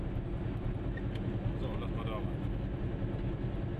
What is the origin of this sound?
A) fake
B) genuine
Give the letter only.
B